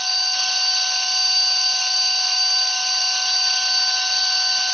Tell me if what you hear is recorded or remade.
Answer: recorded